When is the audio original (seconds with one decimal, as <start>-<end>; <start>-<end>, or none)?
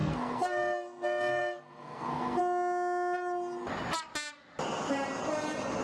2.4-5.8